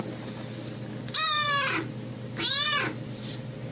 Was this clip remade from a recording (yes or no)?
no